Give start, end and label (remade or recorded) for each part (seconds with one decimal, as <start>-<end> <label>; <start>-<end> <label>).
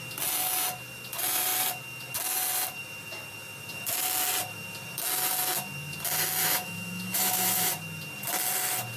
0.0-6.4 recorded; 6.4-7.7 remade; 7.7-9.0 recorded